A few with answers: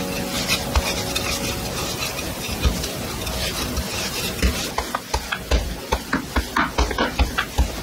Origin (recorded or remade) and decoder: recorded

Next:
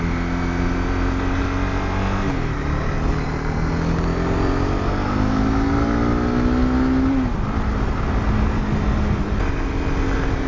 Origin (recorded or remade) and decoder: recorded